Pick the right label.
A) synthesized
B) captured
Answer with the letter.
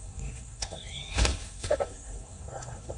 A